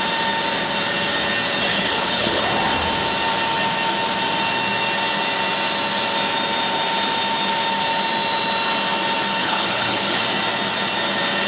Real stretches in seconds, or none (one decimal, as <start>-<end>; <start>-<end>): 0.0-1.7; 2.4-9.4; 10.2-11.5